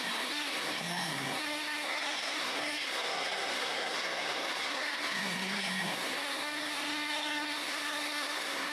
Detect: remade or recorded remade